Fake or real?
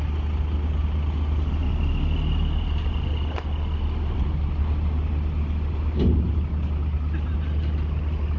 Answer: real